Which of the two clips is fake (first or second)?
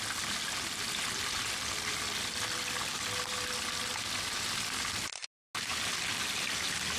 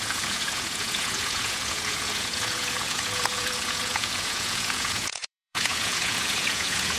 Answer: second